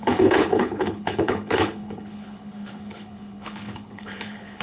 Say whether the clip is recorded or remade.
remade